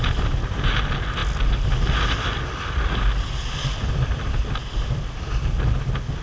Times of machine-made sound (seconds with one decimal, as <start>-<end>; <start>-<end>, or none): none